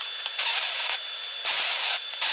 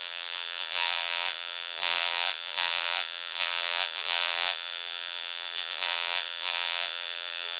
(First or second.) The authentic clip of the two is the first